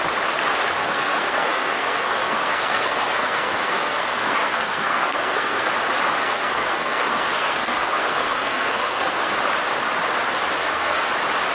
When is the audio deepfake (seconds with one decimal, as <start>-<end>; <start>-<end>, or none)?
0.8-5.7; 6.2-9.4; 10.6-11.1